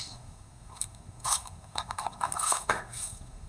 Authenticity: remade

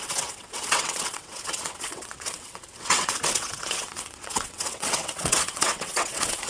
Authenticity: remade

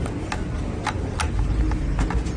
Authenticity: recorded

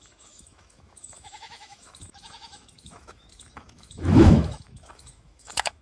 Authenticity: remade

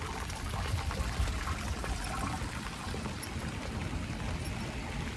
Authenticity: recorded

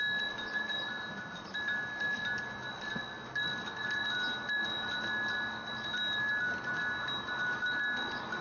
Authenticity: recorded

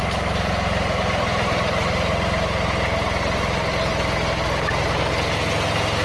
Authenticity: recorded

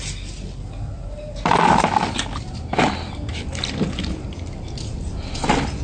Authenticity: recorded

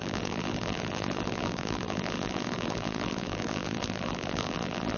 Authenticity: remade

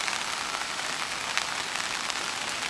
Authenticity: recorded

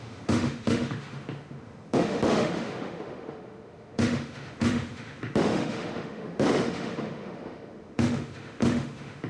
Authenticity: remade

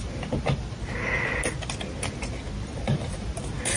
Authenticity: recorded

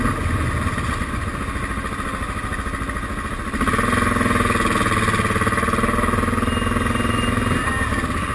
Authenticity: recorded